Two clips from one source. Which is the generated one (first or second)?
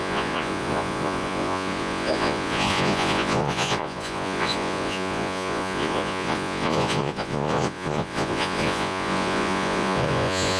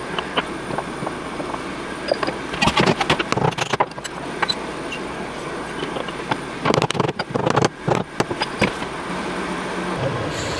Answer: first